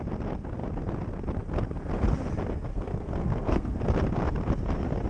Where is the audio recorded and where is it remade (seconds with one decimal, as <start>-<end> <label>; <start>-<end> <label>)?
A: 0.0-2.7 recorded; 2.7-3.8 remade; 3.8-5.1 recorded